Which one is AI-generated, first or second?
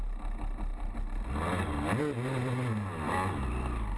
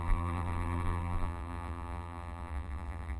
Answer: second